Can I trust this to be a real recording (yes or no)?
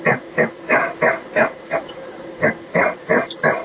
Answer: yes